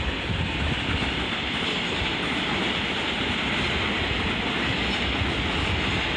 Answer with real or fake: real